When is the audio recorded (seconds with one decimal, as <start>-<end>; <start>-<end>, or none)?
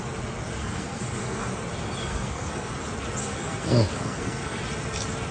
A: 0.0-0.6; 1.5-2.0; 2.7-3.2; 4.6-5.3